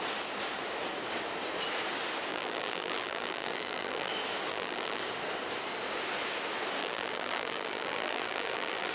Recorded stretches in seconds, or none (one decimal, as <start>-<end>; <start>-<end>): 0.0-2.3; 4.1-4.5; 5.0-6.8